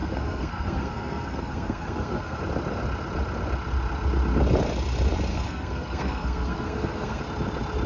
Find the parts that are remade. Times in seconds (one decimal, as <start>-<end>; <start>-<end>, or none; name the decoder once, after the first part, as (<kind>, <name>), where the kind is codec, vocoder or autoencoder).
0.0-2.4 (codec, SNAC); 5.3-7.2